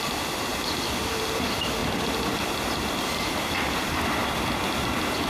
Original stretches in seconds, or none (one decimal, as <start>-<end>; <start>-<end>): 0.0-5.3